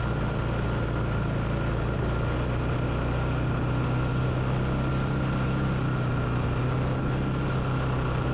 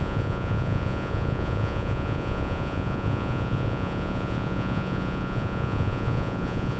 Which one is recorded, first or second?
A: first